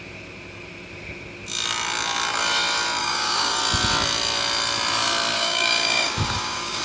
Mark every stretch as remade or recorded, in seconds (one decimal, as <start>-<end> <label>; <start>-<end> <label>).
0.0-3.0 recorded; 3.0-3.6 remade; 3.6-5.3 recorded; 5.3-6.8 remade